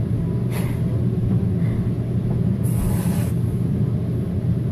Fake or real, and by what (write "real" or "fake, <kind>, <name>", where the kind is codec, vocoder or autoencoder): real